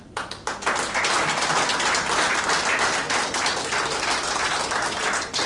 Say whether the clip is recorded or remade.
recorded